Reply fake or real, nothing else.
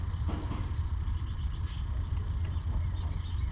real